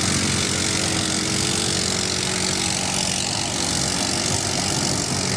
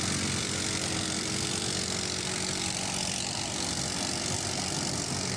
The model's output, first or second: second